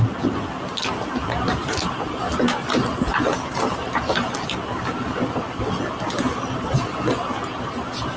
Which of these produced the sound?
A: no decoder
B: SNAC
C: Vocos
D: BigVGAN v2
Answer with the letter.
A